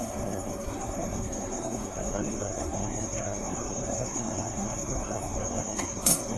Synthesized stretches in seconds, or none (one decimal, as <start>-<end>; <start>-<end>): 0.0-6.4